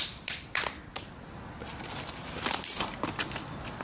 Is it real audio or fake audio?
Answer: fake